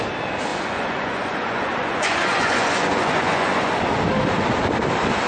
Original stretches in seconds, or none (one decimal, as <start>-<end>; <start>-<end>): 0.0-0.5; 3.7-5.3